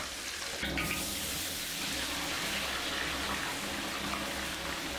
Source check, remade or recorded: recorded